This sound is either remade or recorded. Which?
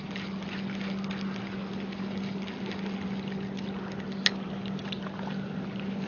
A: recorded